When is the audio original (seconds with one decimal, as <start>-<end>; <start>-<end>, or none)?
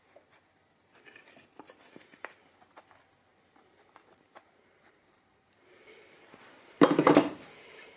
0.0-3.3